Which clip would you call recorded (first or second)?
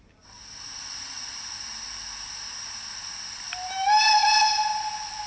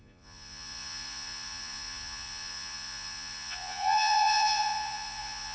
first